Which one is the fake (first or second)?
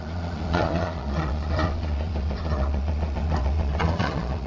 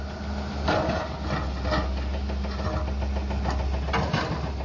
first